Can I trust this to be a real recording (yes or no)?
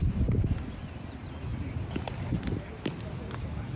yes